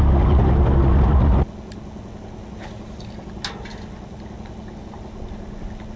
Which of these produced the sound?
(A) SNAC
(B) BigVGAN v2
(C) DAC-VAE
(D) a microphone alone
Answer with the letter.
D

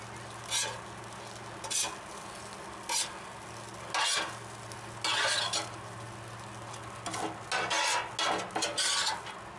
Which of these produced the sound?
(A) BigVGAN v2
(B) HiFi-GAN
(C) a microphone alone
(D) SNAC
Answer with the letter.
C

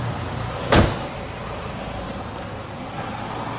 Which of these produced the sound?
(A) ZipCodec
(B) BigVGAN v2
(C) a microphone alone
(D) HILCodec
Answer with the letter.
C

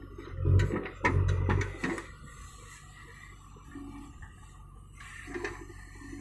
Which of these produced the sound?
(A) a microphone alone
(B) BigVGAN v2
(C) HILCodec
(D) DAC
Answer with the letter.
A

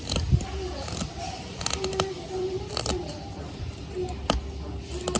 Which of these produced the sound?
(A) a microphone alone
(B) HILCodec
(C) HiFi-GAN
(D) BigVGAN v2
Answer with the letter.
A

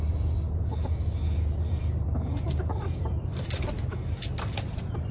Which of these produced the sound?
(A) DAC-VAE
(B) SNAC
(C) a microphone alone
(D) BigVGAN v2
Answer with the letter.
D